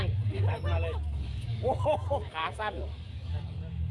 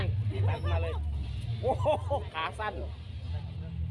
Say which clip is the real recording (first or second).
second